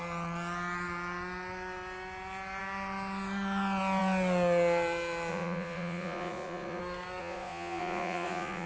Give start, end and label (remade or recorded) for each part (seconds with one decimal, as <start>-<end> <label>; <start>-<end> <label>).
0.0-5.3 recorded; 5.3-6.8 remade; 6.8-7.2 recorded; 7.2-8.7 remade